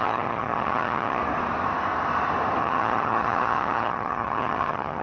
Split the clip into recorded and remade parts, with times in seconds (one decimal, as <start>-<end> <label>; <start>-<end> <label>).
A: 0.0-1.2 remade; 1.2-2.6 recorded; 2.6-5.0 remade